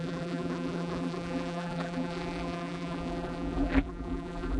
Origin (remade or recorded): remade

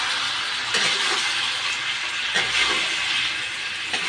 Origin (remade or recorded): recorded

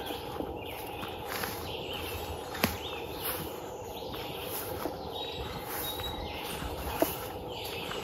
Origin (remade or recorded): remade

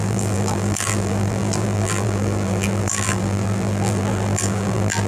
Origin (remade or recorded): remade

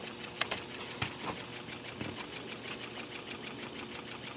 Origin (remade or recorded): recorded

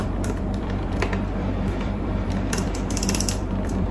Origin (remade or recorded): remade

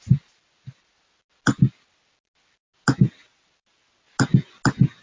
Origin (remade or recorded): recorded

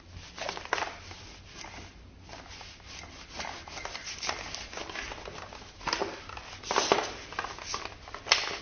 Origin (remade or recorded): recorded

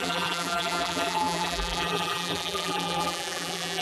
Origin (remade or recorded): remade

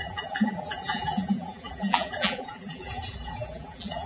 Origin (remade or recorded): remade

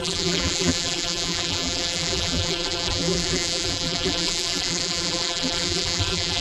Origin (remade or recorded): remade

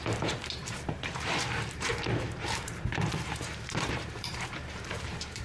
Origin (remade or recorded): remade